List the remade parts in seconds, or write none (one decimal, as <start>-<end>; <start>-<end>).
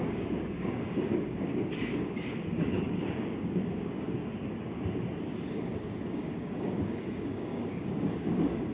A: 0.0-4.2; 6.1-8.7